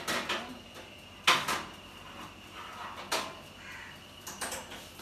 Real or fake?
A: real